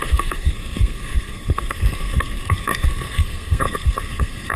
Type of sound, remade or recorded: remade